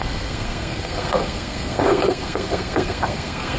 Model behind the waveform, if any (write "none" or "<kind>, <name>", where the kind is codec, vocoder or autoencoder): codec, SNAC